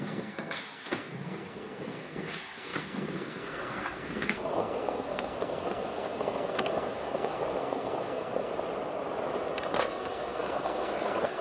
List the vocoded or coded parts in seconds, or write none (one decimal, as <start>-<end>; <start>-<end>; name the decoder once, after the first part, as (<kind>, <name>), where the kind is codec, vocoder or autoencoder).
0.0-8.5 (codec, SNAC); 9.7-11.4